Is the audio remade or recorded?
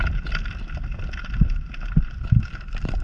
recorded